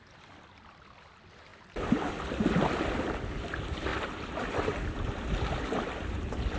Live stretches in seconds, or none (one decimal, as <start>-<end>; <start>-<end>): 0.0-3.9; 5.6-6.6